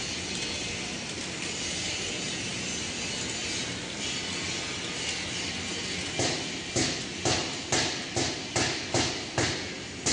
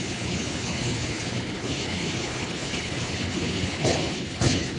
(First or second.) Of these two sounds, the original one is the first